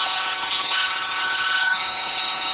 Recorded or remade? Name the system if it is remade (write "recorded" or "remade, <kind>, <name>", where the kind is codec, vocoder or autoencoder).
remade, codec, HILCodec